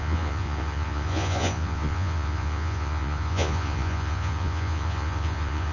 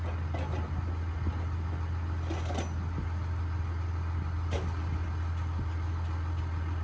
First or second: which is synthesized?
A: first